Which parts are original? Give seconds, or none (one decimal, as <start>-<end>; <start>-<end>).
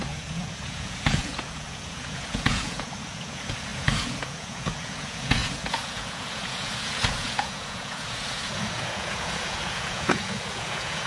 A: none